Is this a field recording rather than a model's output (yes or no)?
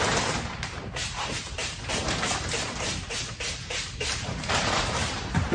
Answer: no